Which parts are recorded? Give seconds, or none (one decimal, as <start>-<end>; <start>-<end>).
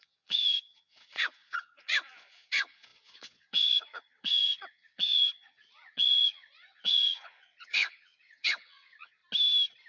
9.2-9.9